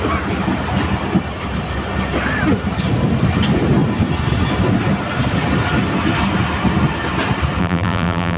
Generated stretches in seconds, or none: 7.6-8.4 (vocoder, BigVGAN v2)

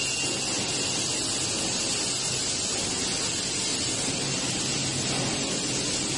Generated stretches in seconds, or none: 3.7-4.8 (vocoder, BigVGAN v2)

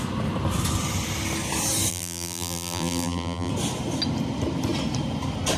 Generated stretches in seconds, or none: 1.9-3.5 (vocoder, BigVGAN v2)

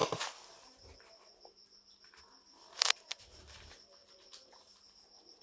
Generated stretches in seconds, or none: 4.0-4.7 (vocoder, BigVGAN v2)

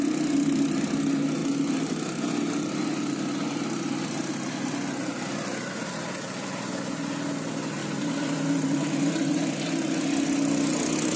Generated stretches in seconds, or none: 7.8-10.0 (vocoder, BigVGAN v2)

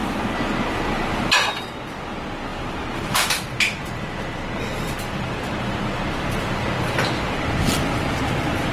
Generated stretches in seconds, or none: 0.0-1.7 (vocoder, BigVGAN v2); 2.5-7.5

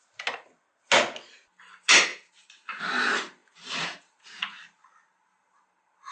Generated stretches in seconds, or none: 2.1-2.8 (vocoder, BigVGAN v2); 3.4-5.5

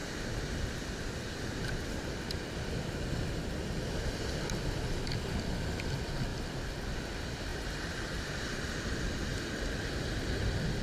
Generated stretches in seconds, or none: 6.3-6.9 (vocoder, BigVGAN v2); 7.5-8.3